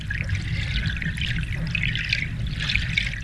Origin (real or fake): real